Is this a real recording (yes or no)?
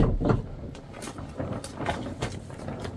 yes